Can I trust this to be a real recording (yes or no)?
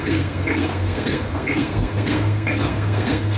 no